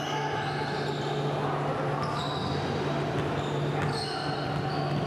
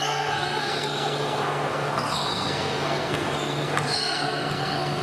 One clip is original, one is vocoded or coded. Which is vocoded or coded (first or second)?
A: second